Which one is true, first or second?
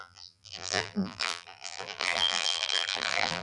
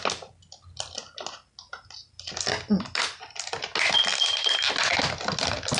second